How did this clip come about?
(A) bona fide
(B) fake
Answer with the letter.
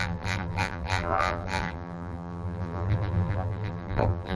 B